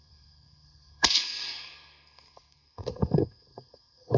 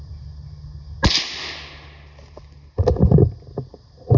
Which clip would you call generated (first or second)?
first